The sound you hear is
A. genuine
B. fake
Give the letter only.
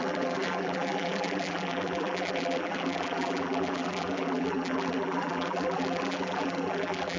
B